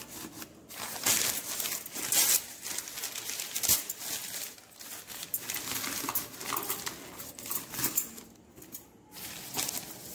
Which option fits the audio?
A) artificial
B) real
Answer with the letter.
B